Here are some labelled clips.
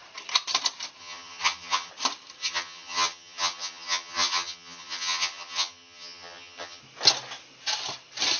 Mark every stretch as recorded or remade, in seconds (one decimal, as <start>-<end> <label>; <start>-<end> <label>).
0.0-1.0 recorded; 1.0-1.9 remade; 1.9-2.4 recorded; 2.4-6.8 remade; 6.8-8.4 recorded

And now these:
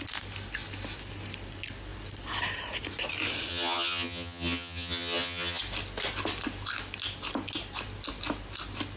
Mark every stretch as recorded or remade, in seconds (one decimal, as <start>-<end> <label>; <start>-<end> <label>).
0.0-3.5 recorded; 3.5-5.6 remade; 5.6-9.0 recorded

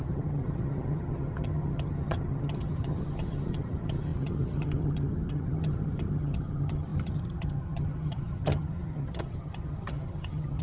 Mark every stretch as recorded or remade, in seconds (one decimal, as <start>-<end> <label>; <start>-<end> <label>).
0.0-10.6 remade